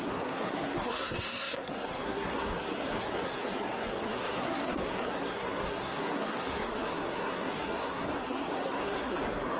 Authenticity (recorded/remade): remade